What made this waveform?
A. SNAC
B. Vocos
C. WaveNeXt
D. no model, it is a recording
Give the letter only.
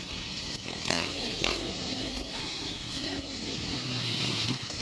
A